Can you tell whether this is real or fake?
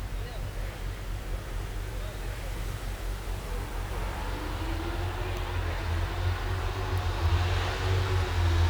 real